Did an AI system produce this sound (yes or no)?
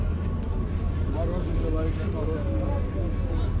no